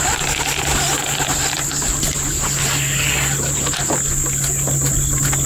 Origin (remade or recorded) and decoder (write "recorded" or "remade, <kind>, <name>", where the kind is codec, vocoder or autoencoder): recorded